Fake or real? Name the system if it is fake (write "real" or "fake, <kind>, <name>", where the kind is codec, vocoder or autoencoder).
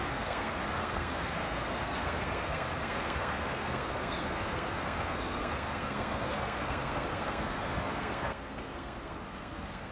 fake, codec, SNAC